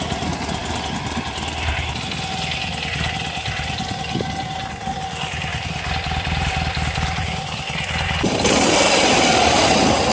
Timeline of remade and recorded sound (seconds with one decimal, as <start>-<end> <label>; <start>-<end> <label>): 0.0-10.1 recorded